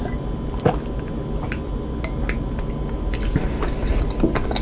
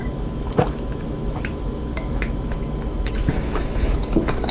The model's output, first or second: second